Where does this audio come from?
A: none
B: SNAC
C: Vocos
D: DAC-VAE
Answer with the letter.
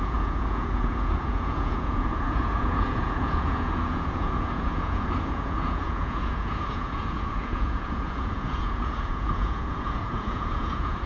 C